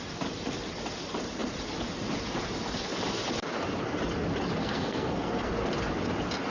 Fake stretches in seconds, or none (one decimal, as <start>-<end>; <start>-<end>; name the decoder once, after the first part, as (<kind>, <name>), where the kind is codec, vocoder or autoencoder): 4.6-5.5 (codec, SNAC)